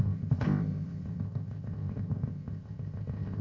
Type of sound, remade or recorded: remade